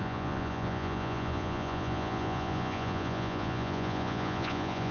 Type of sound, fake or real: fake